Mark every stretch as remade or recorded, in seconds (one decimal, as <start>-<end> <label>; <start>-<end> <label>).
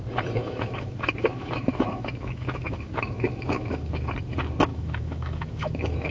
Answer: 0.0-0.4 recorded; 0.4-4.1 remade; 4.1-4.7 recorded; 4.7-6.1 remade